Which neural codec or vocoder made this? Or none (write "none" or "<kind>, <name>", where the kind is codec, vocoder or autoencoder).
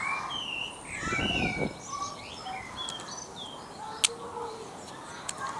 none